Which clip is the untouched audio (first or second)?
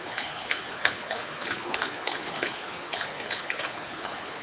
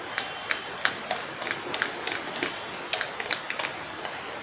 second